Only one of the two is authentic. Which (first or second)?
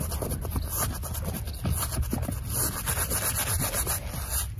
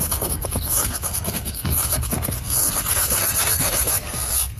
first